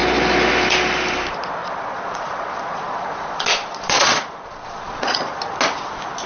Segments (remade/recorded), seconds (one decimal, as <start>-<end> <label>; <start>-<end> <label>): 0.0-1.6 recorded; 1.6-5.4 remade; 5.4-6.3 recorded